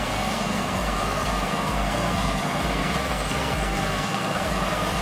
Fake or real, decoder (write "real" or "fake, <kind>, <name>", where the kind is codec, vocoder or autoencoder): fake, codec, SNAC